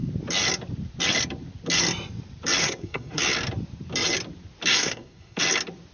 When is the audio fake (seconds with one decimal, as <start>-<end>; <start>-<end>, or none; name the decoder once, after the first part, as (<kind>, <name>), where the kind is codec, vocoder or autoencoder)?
2.6-3.2 (codec, SNAC); 4.7-5.4

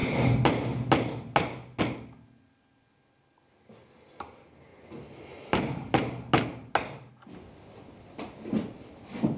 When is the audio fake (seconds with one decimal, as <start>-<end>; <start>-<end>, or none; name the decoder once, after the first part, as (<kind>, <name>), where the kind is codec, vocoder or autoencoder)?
none

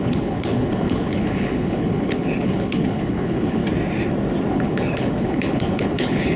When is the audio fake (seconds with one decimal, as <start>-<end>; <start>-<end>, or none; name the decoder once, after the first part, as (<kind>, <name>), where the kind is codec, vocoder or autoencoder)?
0.0-3.6 (codec, HILCodec); 4.5-6.4

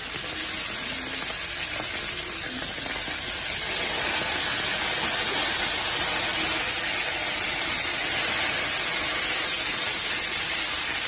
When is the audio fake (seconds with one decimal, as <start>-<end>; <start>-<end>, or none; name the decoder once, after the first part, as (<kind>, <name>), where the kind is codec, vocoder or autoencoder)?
none